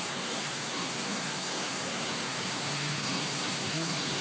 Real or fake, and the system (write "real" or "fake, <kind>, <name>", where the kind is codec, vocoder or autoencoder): fake, codec, SNAC